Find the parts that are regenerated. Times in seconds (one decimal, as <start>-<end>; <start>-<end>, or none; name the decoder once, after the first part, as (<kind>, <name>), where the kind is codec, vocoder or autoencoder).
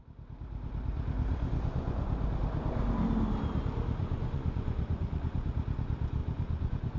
1.3-2.1 (vocoder, Vocos); 4.0-5.5; 6.2-7.0